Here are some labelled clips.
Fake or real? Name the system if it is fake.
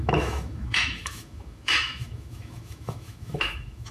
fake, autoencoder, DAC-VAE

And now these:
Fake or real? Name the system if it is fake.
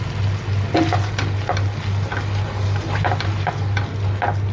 real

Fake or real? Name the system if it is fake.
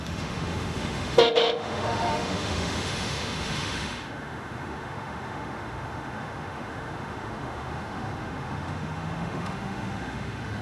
fake, autoencoder, DAC-VAE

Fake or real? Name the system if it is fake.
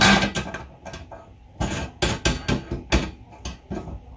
real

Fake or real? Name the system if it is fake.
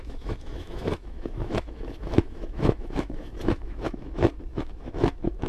fake, autoencoder, DAC-VAE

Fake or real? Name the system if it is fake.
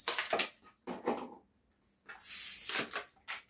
real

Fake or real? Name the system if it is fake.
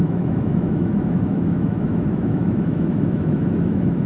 fake, autoencoder, DAC-VAE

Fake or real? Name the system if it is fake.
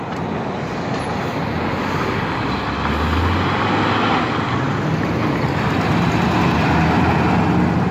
real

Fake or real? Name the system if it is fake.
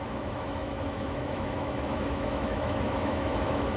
fake, autoencoder, DAC-VAE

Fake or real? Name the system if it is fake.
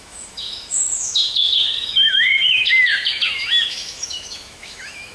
fake, autoencoder, DAC-VAE